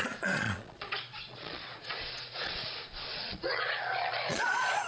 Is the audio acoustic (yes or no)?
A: no